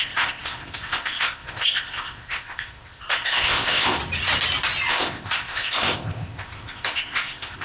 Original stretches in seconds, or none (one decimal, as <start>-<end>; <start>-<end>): 4.0-4.9